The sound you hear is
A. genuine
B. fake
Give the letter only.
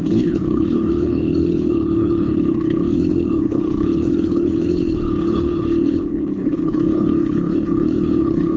B